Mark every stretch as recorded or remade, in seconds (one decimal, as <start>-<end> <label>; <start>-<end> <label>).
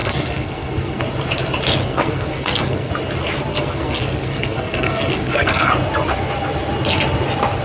0.0-1.0 remade; 1.0-1.8 recorded; 1.8-2.9 remade; 2.9-3.5 recorded; 3.5-5.7 remade; 5.7-7.6 recorded